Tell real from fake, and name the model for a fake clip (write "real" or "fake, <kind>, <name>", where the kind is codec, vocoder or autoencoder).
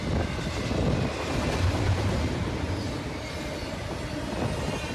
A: real